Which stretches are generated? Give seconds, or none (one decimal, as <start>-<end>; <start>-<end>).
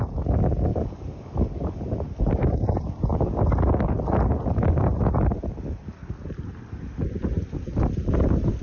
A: 0.7-1.8